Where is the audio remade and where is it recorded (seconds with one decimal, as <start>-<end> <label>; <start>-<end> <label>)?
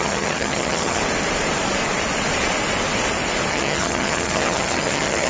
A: 0.0-1.0 remade; 1.0-3.5 recorded; 3.5-5.3 remade